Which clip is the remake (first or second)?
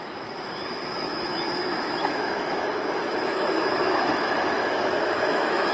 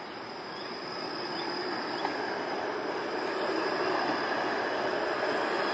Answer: first